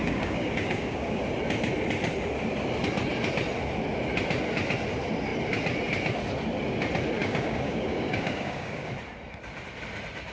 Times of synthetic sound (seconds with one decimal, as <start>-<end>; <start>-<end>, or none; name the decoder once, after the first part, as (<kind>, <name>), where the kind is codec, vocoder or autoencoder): 0.0-1.2 (codec, DAC); 7.2-8.9